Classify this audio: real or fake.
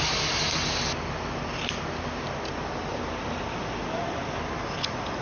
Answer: real